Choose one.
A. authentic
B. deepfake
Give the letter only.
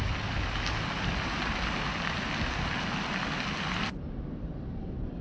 A